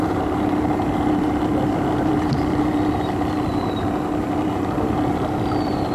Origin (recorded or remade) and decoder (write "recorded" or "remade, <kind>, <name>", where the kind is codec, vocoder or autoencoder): remade, vocoder, BigVGAN v2